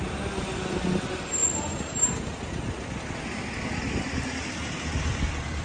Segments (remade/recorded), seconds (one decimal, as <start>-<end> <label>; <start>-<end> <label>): 0.0-5.6 recorded